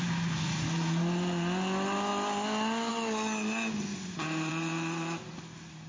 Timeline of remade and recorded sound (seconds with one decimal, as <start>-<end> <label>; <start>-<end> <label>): 0.0-3.9 recorded; 3.9-4.5 remade; 4.5-5.9 recorded